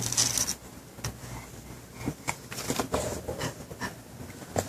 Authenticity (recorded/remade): recorded